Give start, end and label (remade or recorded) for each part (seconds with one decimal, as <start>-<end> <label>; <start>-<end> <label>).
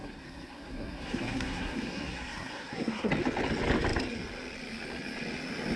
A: 0.0-3.1 remade; 3.1-5.8 recorded